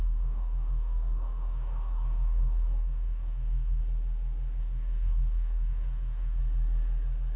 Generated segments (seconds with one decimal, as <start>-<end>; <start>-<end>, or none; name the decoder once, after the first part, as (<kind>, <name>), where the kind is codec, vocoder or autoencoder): 0.0-3.8 (codec, DAC); 4.6-6.4